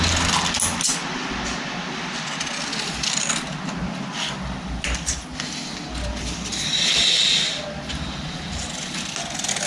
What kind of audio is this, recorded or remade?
recorded